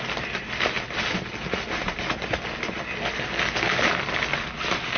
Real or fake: real